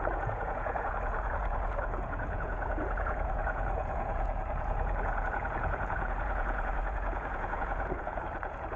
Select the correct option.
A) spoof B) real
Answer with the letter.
A